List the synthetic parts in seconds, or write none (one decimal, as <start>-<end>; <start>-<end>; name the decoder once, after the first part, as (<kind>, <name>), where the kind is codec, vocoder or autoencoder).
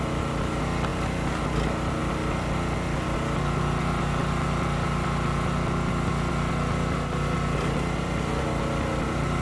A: none